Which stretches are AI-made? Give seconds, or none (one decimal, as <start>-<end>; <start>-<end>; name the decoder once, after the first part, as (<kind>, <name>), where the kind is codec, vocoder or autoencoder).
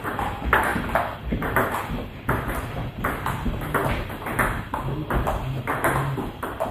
0.7-3.1 (vocoder, BigVGAN v2)